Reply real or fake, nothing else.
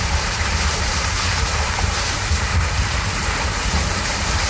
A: fake